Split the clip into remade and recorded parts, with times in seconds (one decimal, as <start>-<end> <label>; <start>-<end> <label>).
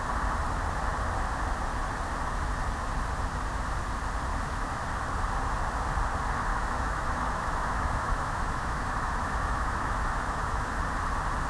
0.0-4.3 recorded; 4.3-4.8 remade; 4.8-6.5 recorded; 6.5-10.7 remade; 10.7-11.5 recorded